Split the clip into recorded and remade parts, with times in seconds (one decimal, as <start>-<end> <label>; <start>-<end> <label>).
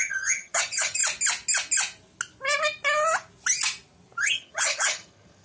0.0-1.0 remade; 1.0-4.2 recorded; 4.2-5.4 remade